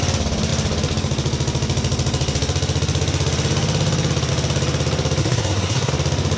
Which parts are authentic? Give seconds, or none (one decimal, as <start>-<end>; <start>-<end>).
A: 0.0-5.2; 5.9-6.4